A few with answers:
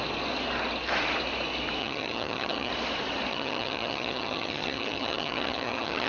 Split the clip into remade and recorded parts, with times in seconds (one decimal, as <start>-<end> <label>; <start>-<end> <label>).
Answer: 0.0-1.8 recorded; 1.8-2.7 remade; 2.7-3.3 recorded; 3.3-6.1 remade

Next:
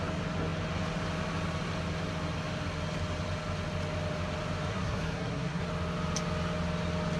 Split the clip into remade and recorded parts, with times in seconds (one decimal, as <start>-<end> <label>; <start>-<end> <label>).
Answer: 0.0-4.7 recorded; 4.7-5.6 remade; 5.6-7.2 recorded

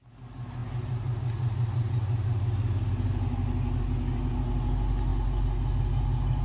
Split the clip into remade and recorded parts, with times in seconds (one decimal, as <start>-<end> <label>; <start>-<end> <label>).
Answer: 0.0-6.4 recorded

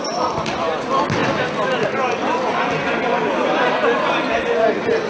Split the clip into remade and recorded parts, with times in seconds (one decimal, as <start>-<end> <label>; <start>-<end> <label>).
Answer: 0.0-5.1 recorded

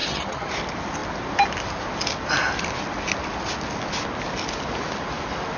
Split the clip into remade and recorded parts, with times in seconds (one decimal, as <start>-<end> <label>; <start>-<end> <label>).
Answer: 0.0-0.5 remade; 0.5-5.6 recorded